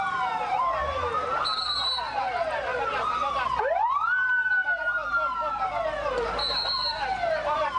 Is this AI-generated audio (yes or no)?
no